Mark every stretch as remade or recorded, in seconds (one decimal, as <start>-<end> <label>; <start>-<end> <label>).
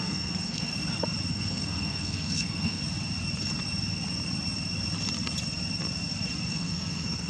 0.0-0.7 remade; 0.7-1.3 recorded; 1.3-2.8 remade; 2.8-6.5 recorded; 6.5-7.3 remade